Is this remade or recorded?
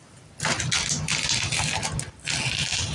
recorded